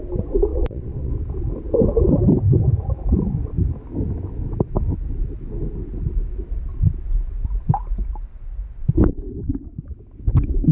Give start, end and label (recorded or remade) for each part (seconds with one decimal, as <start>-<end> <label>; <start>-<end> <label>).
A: 0.0-0.5 recorded; 0.5-1.1 remade; 1.1-10.7 recorded